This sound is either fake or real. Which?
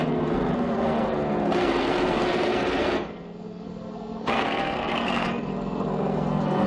fake